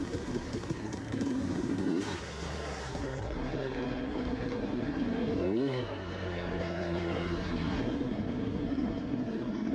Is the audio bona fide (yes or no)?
no